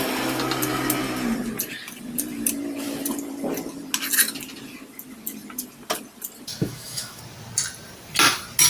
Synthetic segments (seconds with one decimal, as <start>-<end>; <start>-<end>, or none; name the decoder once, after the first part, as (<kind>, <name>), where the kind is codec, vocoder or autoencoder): 6.5-7.2 (autoencoder, DAC-VAE)